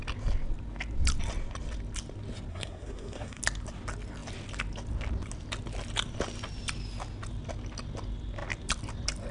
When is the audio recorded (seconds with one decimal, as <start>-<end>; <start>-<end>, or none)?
0.0-2.5; 3.4-9.3